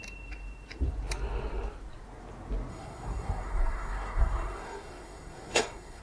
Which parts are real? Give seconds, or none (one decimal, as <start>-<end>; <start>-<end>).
0.0-2.7